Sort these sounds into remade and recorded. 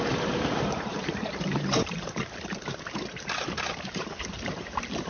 remade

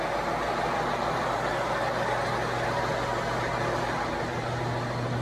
recorded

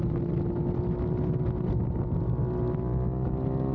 recorded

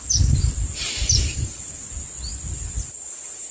remade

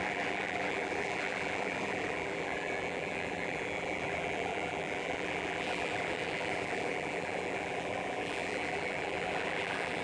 remade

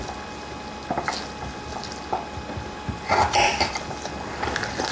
recorded